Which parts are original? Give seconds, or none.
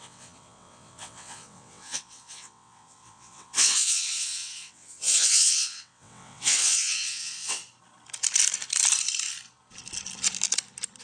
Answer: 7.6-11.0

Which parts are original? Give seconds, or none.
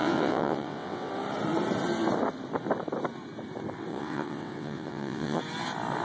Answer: 1.1-3.9; 5.4-6.0